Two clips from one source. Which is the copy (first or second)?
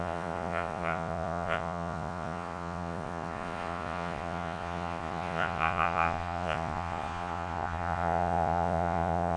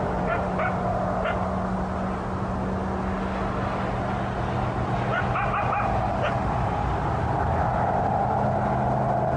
first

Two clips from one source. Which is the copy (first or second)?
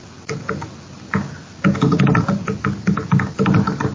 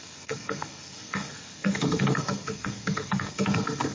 second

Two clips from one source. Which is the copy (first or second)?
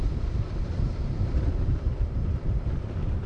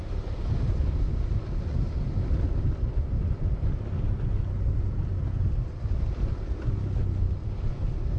first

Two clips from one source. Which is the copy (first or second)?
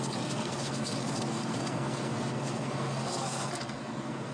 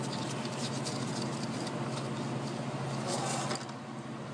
first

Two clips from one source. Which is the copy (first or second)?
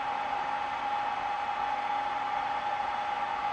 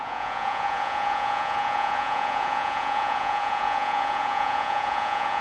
second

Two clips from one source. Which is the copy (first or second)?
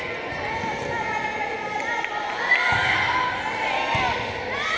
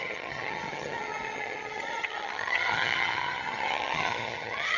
second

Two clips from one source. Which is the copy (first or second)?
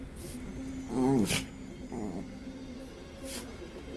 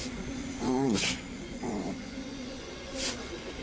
second